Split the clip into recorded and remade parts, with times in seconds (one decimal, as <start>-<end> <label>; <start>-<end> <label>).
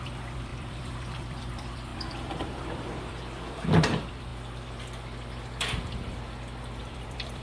0.0-4.3 remade; 4.3-6.8 recorded; 6.8-7.4 remade